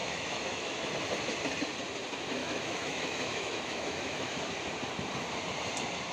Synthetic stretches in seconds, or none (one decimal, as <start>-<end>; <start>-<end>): 0.0-0.9; 2.4-4.4